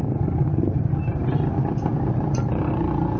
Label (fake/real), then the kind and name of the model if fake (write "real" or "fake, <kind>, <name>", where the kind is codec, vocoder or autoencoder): fake, vocoder, BigVGAN v2